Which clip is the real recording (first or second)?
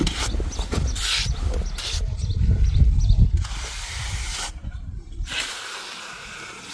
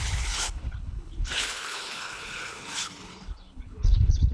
first